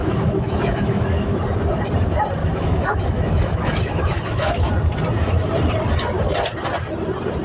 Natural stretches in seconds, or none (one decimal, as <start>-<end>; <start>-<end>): 1.3-2.4; 4.7-7.4